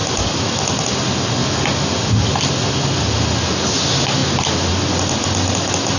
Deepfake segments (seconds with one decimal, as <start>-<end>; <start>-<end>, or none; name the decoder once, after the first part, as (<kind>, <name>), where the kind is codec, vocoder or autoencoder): none